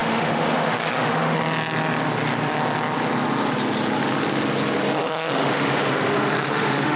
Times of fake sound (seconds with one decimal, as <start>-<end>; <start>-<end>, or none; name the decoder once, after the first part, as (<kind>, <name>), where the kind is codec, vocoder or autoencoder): 0.0-1.4 (autoencoder, DAC-VAE); 4.8-7.0